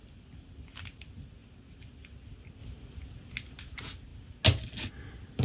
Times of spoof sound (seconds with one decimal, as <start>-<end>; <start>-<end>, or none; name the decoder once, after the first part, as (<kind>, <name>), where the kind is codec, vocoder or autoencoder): none